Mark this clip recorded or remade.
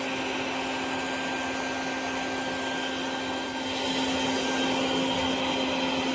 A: recorded